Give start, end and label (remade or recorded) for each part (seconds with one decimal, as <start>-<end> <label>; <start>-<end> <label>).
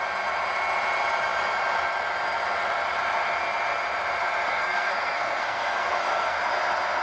0.0-4.5 recorded; 4.5-6.4 remade; 6.4-7.0 recorded